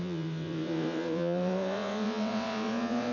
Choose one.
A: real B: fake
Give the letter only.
B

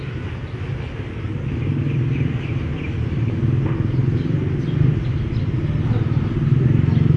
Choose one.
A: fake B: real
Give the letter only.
B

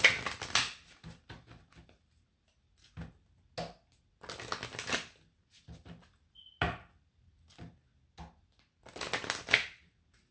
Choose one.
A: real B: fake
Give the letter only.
A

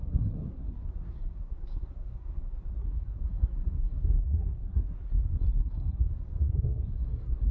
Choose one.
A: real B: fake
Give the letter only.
B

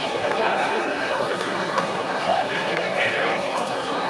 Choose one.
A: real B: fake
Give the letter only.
B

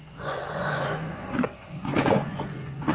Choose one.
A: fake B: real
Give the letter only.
A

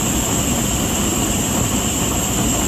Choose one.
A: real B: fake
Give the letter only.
A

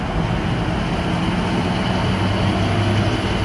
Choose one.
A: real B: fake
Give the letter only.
A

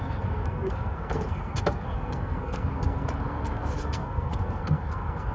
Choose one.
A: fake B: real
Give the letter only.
A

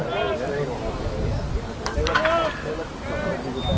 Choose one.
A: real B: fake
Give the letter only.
A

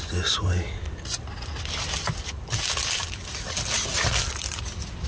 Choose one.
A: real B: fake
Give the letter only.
A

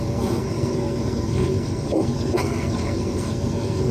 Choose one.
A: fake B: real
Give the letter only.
A